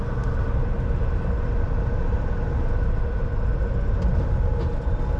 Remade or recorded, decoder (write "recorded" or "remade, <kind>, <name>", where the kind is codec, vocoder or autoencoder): recorded